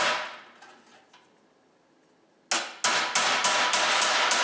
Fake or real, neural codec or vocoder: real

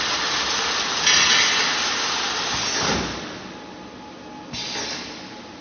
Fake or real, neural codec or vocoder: real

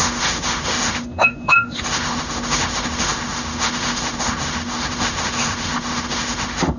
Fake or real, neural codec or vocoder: fake, autoencoder, DAC-VAE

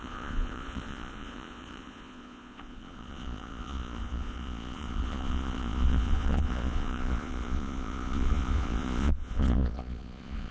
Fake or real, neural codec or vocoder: fake, vocoder, Vocos